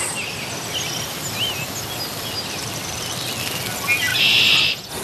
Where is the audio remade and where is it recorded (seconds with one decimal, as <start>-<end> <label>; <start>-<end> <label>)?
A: 0.0-4.1 recorded; 4.1-5.0 remade